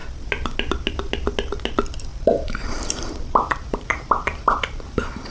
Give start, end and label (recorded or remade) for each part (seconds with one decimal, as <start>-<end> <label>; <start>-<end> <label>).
0.0-2.1 recorded; 2.1-5.3 remade